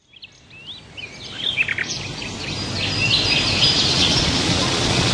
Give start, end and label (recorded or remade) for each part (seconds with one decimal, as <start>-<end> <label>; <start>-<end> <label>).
0.0-3.9 recorded; 3.9-5.1 remade